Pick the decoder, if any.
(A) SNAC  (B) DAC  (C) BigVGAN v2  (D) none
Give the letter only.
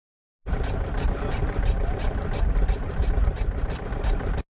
D